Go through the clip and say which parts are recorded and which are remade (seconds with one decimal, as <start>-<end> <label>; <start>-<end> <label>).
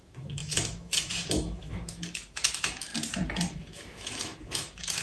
0.0-2.9 remade; 2.9-3.5 recorded; 3.5-5.0 remade